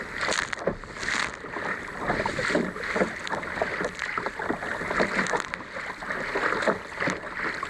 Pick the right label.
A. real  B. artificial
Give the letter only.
A